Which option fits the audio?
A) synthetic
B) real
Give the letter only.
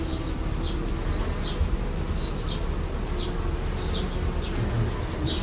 B